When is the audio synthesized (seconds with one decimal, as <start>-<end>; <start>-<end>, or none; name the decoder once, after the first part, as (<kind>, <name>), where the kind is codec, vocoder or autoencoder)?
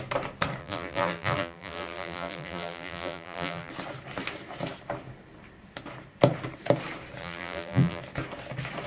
0.6-3.7 (vocoder, BigVGAN v2); 7.2-8.0